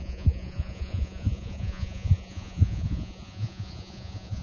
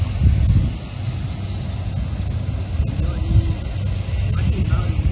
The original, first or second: second